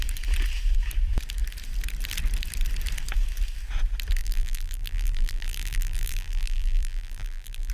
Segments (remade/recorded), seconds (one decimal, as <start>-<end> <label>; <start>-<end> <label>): 0.0-4.2 recorded; 4.2-7.7 remade